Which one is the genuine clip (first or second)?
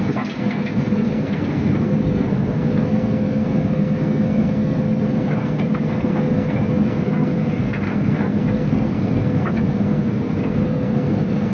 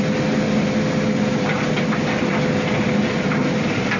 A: second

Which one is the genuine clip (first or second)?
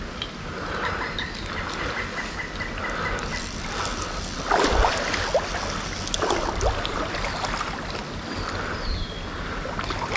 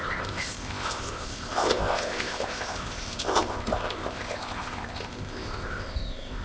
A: first